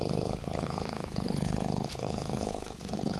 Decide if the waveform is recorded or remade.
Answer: remade